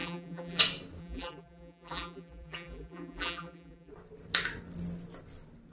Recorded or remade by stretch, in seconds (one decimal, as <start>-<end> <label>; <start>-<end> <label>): 0.0-0.6 remade; 0.6-1.0 recorded; 1.0-3.9 remade; 3.9-5.7 recorded